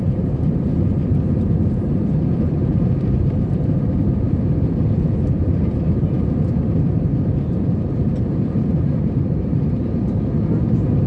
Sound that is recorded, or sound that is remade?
remade